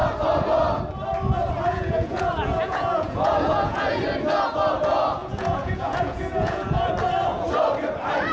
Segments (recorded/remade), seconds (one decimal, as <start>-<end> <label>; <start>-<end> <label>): 0.0-1.7 recorded; 1.7-4.0 remade; 4.0-5.2 recorded; 5.2-6.9 remade; 6.9-8.3 recorded